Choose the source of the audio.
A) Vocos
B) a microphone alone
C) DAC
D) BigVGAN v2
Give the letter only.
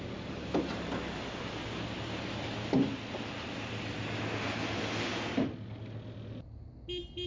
B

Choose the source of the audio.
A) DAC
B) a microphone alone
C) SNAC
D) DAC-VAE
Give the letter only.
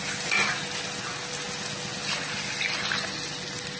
B